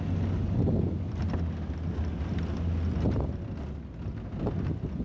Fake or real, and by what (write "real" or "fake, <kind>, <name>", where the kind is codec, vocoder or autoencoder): real